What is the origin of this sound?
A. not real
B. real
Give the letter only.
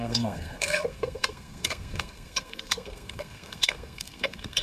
A